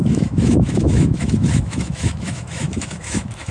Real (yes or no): no